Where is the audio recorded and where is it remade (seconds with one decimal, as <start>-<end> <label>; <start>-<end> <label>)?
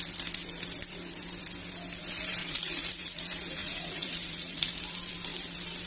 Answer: 0.0-2.4 recorded; 2.4-3.2 remade; 3.2-3.6 recorded; 3.6-4.8 remade; 4.8-5.9 recorded